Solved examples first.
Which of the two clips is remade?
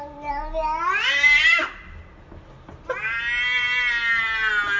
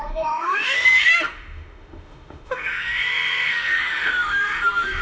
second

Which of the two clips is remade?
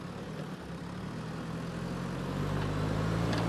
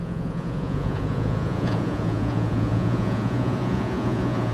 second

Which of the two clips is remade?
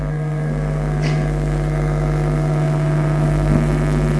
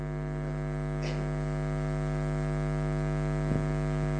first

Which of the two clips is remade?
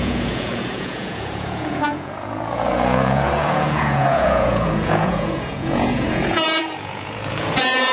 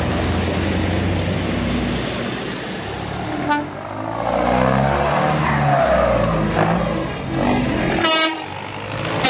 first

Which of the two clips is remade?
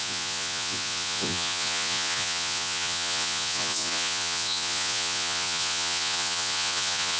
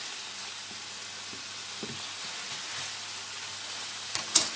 first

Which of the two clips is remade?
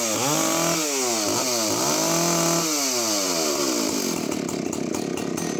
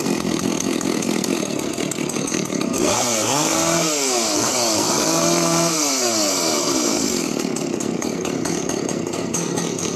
second